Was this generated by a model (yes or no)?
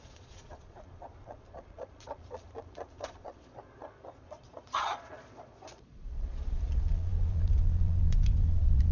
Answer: yes